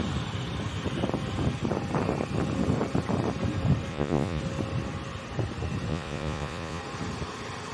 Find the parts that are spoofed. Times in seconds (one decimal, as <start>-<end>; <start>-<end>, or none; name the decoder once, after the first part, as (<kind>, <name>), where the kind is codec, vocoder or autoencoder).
3.9-4.4 (vocoder, Vocos); 5.9-6.8